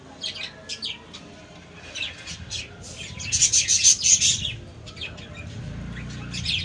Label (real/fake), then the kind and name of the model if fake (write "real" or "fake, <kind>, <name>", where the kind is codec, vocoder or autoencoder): real